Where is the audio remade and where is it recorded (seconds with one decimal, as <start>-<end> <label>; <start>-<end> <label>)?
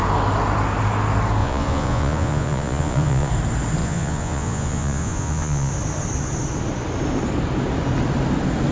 0.0-1.4 recorded; 1.4-3.3 remade; 3.3-3.8 recorded; 3.8-5.7 remade; 5.7-8.7 recorded